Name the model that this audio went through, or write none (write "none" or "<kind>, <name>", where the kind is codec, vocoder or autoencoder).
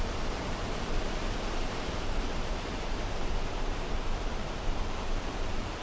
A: vocoder, BigVGAN v2